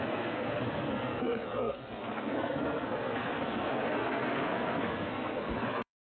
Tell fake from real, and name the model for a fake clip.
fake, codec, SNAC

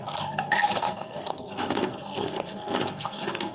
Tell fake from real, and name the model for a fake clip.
fake, codec, SNAC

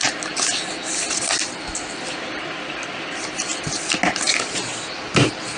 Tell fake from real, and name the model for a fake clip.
real